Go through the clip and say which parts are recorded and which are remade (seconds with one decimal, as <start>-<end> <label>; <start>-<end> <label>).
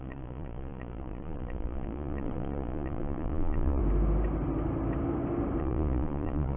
0.0-3.8 remade; 3.8-5.6 recorded; 5.6-6.6 remade